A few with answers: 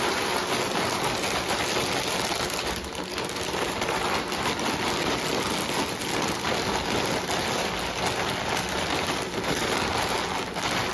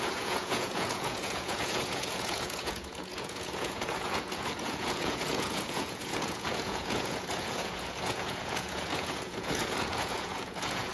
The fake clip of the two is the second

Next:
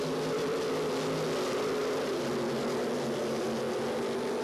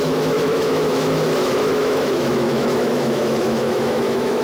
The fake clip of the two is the second